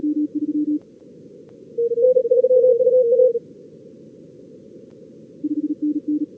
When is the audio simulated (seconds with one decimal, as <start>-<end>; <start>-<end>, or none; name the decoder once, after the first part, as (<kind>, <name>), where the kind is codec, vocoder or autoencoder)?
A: none